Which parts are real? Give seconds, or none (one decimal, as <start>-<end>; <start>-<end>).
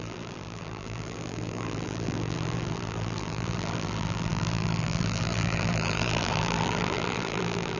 none